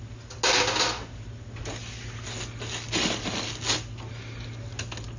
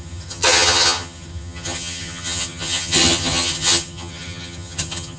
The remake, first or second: second